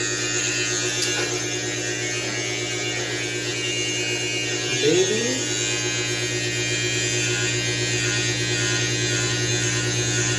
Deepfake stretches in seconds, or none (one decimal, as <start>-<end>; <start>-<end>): none